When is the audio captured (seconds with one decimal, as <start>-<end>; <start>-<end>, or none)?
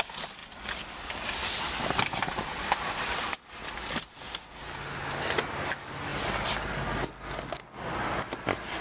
0.0-8.8